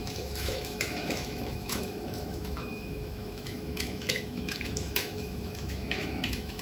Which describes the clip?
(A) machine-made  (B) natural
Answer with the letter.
A